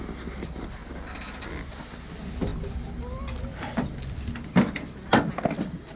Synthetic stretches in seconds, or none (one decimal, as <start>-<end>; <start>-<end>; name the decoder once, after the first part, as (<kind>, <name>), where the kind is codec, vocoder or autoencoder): none